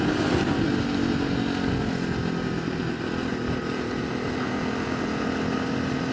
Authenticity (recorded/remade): recorded